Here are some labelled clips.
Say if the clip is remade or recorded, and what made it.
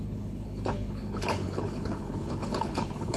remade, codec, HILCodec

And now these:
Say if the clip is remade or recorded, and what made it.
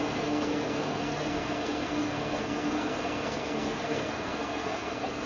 remade, codec, SNAC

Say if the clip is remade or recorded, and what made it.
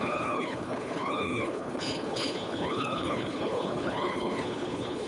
remade, codec, HILCodec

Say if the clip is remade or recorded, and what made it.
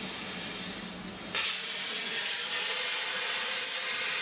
recorded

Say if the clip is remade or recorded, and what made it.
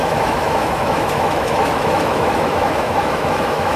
remade, autoencoder, DAC-VAE